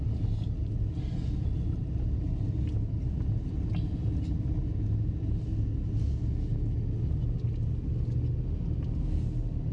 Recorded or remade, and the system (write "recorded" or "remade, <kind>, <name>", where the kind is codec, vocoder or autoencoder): recorded